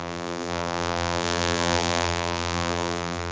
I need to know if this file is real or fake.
fake